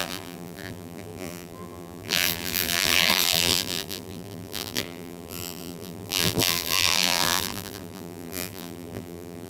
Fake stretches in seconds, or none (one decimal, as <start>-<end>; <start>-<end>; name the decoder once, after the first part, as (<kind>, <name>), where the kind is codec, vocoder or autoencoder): 0.0-9.5 (vocoder, BigVGAN v2)